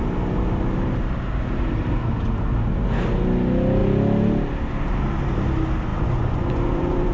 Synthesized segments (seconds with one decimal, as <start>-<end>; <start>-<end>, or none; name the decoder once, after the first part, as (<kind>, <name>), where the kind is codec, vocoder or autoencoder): 5.9-7.1 (vocoder, Vocos)